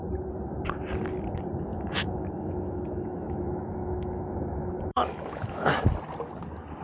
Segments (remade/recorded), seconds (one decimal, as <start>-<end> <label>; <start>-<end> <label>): 0.0-1.7 recorded; 1.7-5.8 remade; 5.8-6.8 recorded